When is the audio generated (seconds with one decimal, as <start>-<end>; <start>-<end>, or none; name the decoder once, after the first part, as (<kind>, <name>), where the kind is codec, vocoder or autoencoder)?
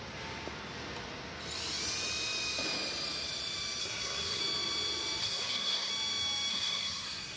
3.8-4.4 (codec, SNAC); 5.2-5.9; 6.5-7.4